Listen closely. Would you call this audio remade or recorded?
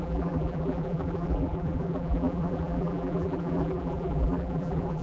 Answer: remade